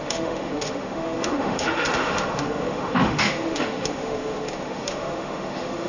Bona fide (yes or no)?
no